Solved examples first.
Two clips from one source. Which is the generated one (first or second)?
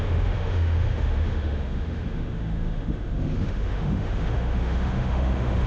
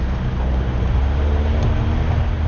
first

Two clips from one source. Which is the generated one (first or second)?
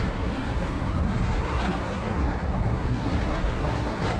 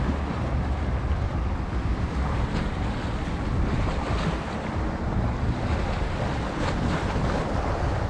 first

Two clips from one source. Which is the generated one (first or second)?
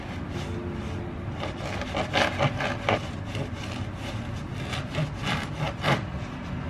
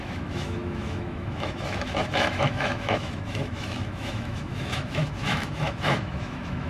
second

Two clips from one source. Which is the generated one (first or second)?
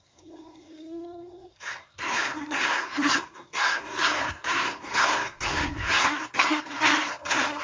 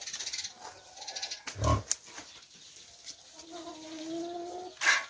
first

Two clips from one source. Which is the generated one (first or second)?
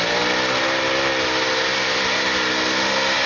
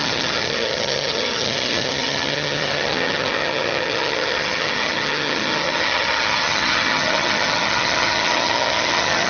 second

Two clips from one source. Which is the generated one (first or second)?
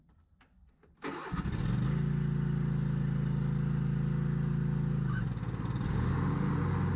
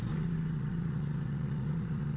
second